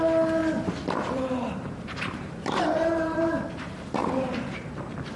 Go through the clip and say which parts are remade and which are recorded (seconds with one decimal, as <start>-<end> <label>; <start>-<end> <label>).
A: 0.0-0.4 recorded; 0.4-3.5 remade; 3.5-4.0 recorded; 4.0-4.8 remade; 4.8-5.2 recorded